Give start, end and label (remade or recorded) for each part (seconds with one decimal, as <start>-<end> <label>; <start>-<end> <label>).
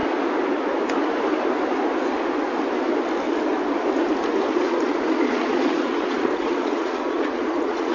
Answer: 0.0-4.5 recorded; 4.5-7.9 remade